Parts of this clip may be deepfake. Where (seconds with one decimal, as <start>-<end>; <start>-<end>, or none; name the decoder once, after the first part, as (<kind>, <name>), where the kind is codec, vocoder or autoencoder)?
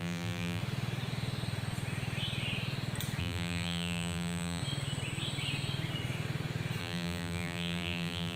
0.0-0.6 (vocoder, BigVGAN v2); 3.2-4.6; 6.8-8.4